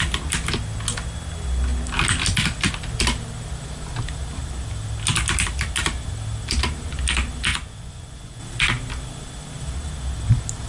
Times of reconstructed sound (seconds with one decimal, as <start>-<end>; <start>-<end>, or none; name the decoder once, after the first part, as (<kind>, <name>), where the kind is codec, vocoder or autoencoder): 7.5-8.4 (vocoder, Vocos)